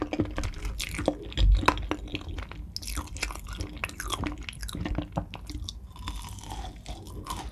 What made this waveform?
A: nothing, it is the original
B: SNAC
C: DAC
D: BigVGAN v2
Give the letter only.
A